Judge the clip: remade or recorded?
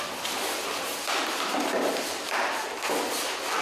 recorded